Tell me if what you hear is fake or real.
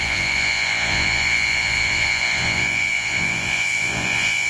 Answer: fake